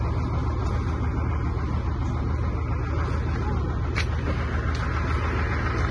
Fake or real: real